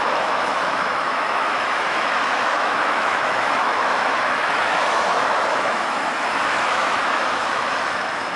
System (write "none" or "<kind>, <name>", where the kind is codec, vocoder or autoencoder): autoencoder, DAC-VAE